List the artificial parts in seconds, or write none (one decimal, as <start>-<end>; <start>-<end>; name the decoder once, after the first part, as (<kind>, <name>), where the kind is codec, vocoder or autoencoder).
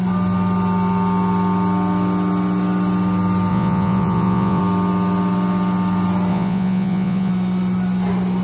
3.5-4.6 (vocoder, Vocos); 6.3-7.3